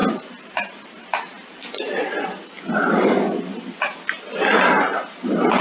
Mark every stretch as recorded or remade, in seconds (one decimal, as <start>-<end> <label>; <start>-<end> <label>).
0.0-5.6 recorded